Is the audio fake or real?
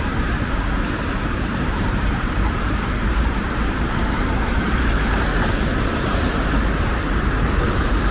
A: fake